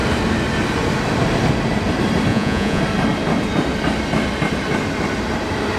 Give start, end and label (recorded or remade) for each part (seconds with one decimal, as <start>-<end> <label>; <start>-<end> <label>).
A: 0.0-2.3 recorded; 2.3-2.8 remade; 2.8-5.8 recorded